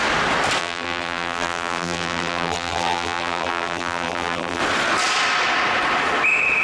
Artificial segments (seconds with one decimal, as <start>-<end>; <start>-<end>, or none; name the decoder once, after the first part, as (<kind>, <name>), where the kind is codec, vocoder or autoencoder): 0.6-4.6 (vocoder, BigVGAN v2)

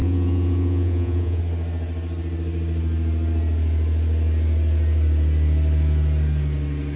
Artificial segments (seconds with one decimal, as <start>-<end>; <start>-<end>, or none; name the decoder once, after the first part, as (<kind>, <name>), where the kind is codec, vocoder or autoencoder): 0.0-1.4 (vocoder, Vocos)

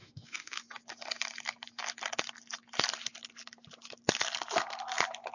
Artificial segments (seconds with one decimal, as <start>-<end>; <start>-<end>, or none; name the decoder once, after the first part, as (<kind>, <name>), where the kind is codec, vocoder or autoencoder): 0.0-0.6 (autoencoder, DAC-VAE)

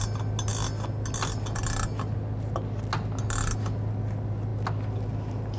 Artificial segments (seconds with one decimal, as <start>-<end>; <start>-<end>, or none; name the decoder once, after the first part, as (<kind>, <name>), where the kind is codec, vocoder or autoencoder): none

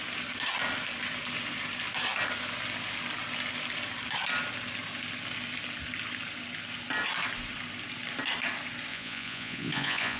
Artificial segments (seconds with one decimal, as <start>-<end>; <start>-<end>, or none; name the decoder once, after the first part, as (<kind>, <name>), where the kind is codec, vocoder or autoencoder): 8.9-10.2 (vocoder, Vocos)

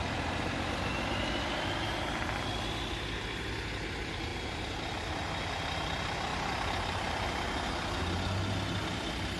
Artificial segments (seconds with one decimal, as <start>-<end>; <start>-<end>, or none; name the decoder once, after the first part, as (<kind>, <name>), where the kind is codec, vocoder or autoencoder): 6.3-7.5 (vocoder, BigVGAN v2)